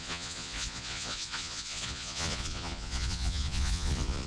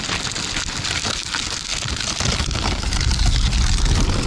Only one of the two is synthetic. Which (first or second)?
first